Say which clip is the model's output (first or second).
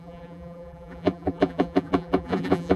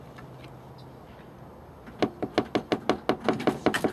first